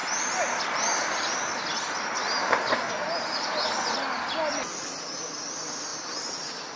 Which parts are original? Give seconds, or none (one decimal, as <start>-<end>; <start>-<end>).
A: 0.0-6.8